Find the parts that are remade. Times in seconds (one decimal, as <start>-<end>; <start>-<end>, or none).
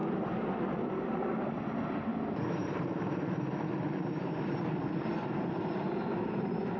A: 0.0-1.5; 2.1-6.0